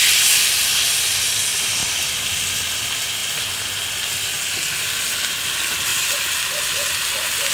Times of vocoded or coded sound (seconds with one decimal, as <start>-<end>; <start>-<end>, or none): none